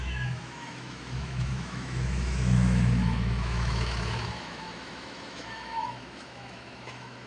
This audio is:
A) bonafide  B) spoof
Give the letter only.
B